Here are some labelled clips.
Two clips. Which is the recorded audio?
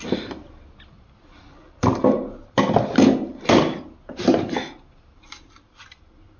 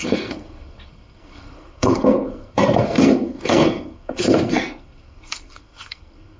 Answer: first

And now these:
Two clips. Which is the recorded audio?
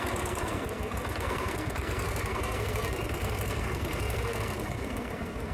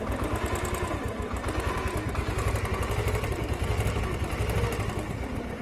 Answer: second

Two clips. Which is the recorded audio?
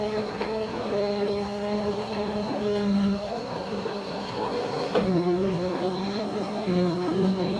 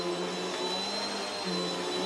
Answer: second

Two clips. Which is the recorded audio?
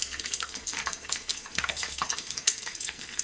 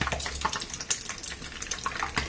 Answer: second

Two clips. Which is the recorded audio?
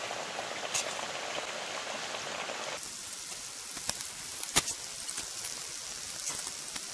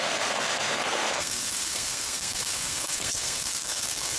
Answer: first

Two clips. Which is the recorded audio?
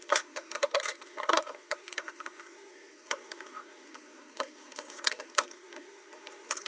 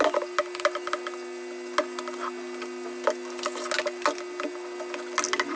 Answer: second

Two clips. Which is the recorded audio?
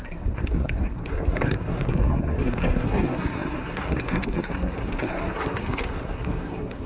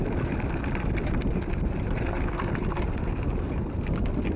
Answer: second